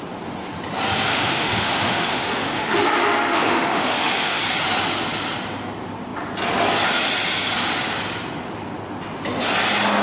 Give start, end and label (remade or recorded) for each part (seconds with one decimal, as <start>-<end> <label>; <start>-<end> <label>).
0.0-1.1 recorded; 1.1-4.4 remade; 4.4-10.0 recorded